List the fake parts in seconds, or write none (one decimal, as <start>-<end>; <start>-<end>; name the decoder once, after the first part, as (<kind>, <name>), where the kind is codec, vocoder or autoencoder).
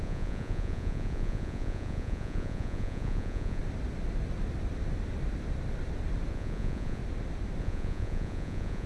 0.0-3.6 (vocoder, Vocos); 6.3-7.0; 7.6-8.9